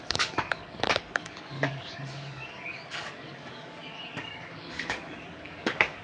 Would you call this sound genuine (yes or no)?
no